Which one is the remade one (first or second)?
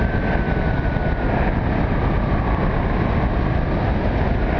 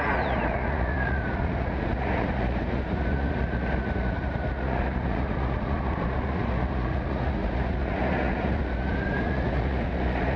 second